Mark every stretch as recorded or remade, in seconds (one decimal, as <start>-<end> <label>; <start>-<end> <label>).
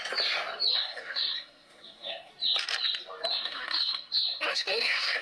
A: 0.0-0.7 recorded; 0.7-2.3 remade; 2.3-3.3 recorded; 3.3-5.2 remade